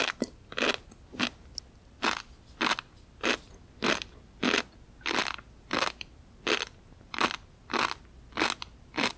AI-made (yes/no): no